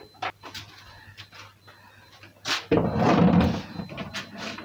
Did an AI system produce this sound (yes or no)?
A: no